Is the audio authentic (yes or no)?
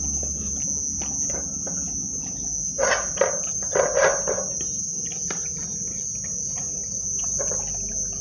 yes